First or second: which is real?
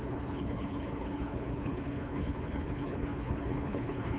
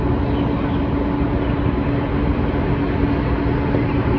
second